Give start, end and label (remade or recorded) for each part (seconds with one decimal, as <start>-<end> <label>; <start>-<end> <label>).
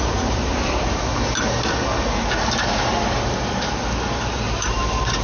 0.0-1.1 remade; 1.1-4.2 recorded; 4.2-5.2 remade